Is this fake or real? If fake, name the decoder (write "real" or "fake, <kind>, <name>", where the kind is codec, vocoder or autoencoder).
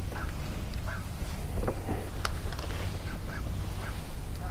real